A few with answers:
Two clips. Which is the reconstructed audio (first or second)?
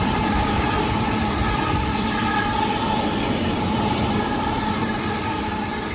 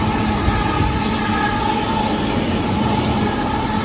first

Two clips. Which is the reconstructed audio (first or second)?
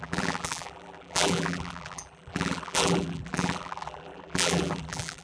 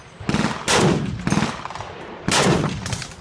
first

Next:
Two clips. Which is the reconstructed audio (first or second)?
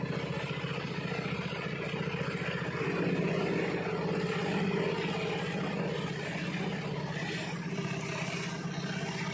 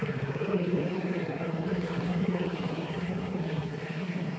second